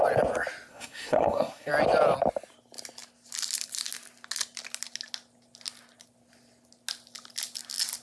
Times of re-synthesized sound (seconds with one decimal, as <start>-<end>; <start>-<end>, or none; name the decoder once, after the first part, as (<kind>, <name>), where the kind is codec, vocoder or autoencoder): 0.7-1.7 (codec, SNAC)